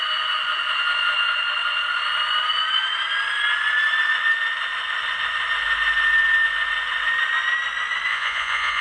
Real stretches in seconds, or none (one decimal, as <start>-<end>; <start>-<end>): 0.0-8.1